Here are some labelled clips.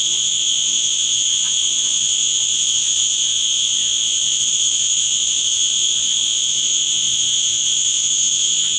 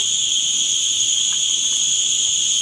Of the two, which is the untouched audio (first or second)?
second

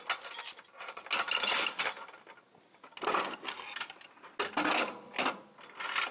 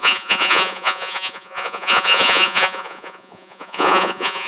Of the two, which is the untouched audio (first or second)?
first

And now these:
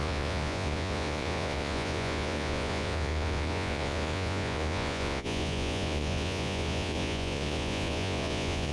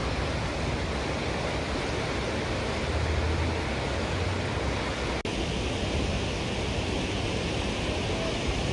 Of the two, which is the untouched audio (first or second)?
second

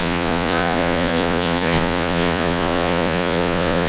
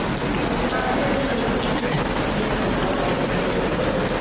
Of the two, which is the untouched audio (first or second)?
second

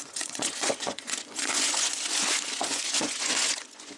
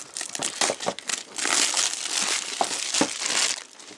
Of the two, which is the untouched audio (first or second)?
second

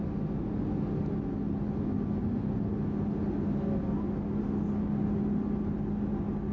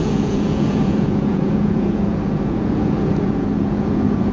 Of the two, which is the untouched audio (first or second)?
first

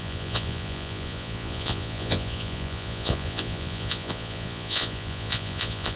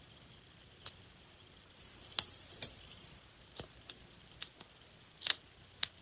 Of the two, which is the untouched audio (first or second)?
second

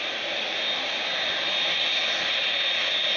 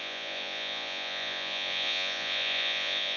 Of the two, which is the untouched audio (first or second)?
first